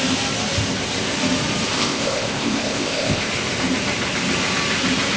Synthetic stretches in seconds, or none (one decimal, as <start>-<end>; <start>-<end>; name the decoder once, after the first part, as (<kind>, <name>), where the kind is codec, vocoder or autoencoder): 1.7-3.3 (codec, ZipCodec)